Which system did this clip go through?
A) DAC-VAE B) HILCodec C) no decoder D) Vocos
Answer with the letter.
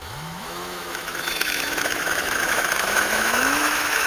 A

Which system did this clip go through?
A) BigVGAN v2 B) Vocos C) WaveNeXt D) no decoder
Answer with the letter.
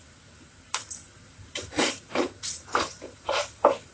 D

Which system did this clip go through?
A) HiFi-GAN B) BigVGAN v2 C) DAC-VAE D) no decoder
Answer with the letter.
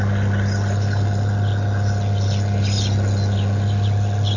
D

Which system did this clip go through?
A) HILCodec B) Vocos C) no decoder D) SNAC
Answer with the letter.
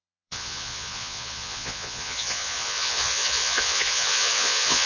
B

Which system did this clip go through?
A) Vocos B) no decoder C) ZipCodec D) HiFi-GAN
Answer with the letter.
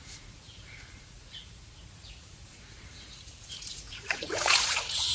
A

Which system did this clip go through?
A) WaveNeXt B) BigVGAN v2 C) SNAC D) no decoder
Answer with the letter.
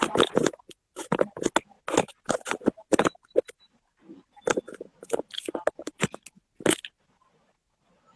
D